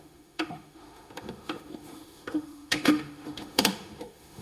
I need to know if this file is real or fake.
fake